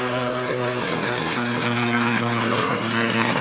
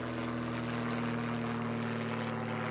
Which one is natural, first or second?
second